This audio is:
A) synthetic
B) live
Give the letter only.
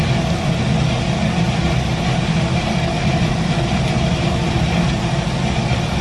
B